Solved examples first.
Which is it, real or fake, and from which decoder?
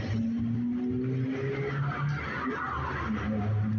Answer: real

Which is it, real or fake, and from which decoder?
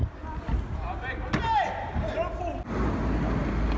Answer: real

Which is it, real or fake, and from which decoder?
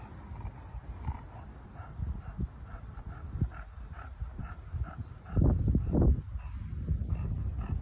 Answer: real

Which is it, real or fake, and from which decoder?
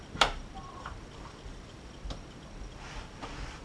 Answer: real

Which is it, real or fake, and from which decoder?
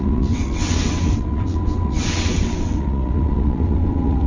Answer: fake, vocoder, WaveNeXt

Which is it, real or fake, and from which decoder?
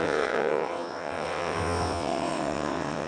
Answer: fake, vocoder, WaveNeXt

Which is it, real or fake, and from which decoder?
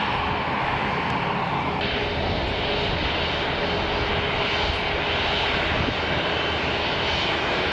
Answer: real